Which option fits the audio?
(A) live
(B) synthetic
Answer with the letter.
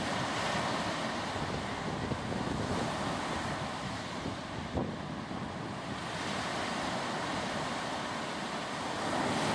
A